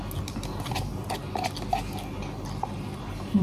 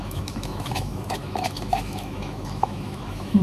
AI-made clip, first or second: second